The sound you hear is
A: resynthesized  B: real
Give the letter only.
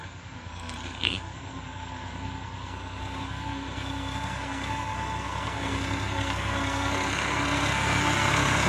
A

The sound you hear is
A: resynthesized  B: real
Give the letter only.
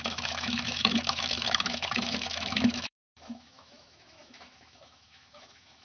A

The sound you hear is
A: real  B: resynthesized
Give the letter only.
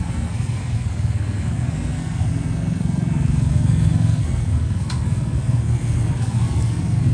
B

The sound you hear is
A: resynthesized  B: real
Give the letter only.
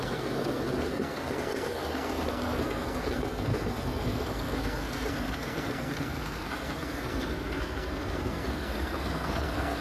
A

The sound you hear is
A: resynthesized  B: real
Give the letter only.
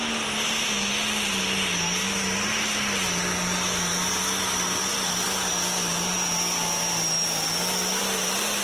B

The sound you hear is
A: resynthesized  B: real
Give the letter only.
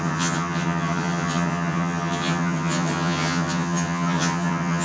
A